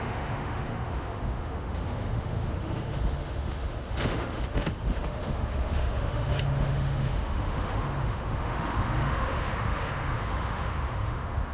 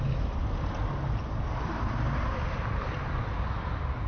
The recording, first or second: second